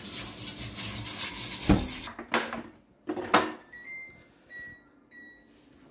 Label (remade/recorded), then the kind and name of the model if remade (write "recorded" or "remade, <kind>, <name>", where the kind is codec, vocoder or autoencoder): recorded